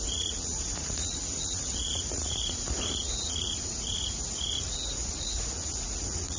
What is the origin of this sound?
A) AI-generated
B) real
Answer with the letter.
A